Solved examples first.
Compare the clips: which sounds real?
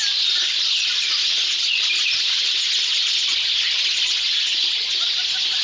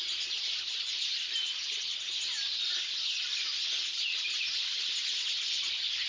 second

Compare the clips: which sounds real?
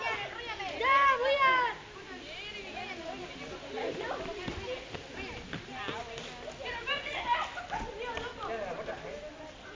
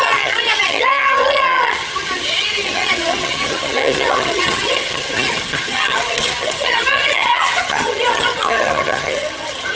first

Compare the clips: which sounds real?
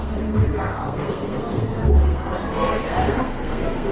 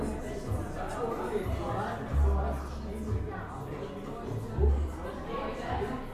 second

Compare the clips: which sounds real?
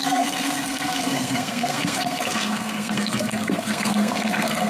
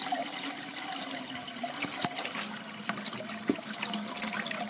second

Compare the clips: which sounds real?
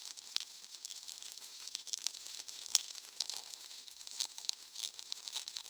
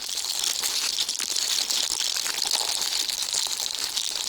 second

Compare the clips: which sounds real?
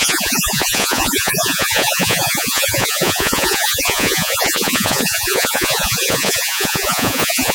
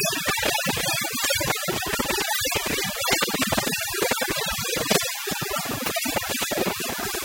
second